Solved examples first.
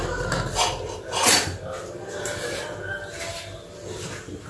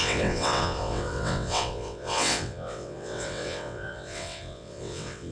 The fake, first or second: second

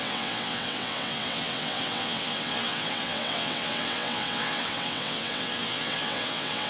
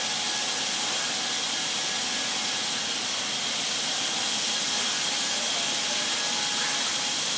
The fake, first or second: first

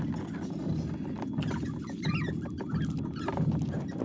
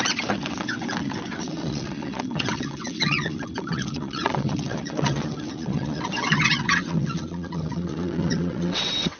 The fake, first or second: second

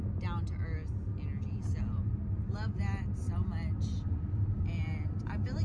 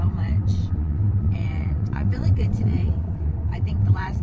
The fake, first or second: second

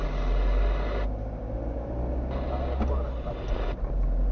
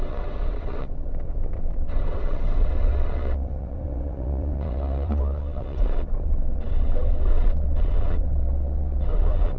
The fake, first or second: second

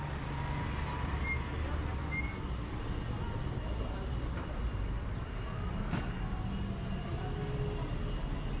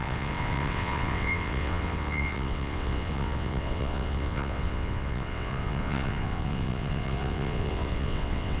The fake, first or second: second